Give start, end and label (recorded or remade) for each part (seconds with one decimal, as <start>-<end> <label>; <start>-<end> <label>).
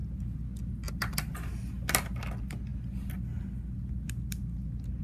0.0-5.0 recorded